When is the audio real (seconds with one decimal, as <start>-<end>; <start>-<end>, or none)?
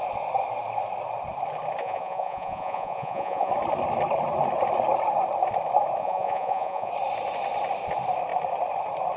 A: 0.0-1.8; 3.5-6.0; 6.9-9.2